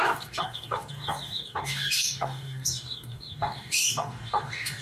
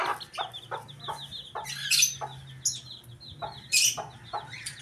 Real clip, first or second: second